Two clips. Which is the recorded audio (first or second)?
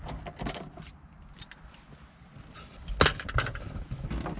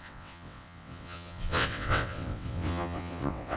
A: first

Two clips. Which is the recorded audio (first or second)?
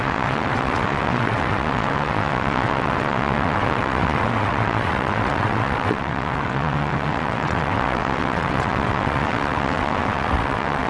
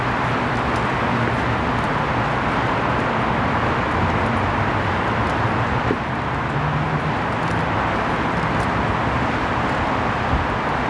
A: second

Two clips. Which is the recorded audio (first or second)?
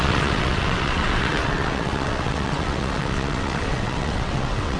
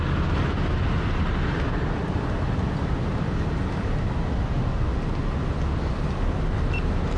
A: second